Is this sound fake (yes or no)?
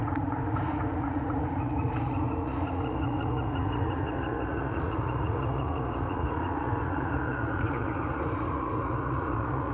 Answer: yes